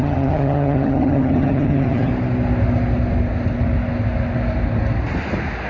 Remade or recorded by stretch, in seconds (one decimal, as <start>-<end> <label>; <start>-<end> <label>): 0.0-2.1 remade; 2.1-5.7 recorded